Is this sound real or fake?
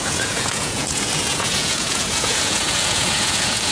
fake